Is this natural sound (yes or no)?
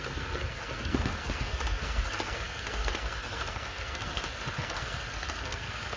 no